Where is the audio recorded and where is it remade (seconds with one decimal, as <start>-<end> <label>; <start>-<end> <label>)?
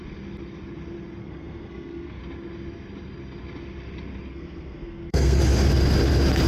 0.0-1.2 recorded; 1.2-2.2 remade; 2.2-4.3 recorded; 4.3-5.4 remade; 5.4-6.5 recorded